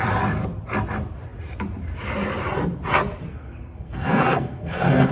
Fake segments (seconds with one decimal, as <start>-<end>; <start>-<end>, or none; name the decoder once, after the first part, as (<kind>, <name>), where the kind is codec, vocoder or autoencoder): 3.3-5.1 (codec, SNAC)